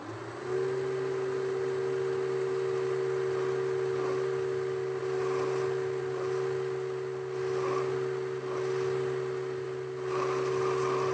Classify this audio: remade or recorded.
recorded